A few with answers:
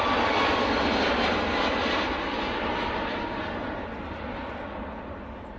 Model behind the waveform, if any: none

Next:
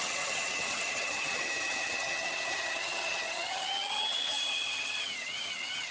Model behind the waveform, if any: vocoder, HiFi-GAN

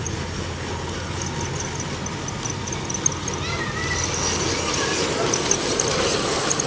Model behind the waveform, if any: none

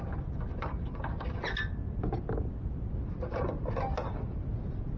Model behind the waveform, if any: none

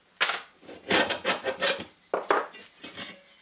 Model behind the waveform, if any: none